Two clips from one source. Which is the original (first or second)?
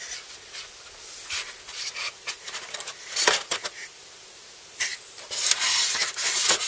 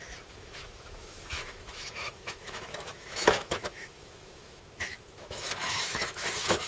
first